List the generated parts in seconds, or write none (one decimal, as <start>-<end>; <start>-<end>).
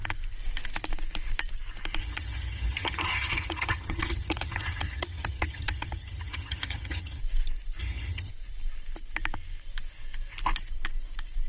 2.0-7.2; 7.8-8.3